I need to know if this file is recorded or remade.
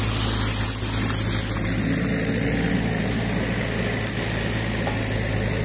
recorded